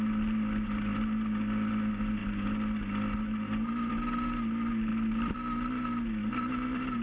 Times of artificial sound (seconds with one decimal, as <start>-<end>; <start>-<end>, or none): none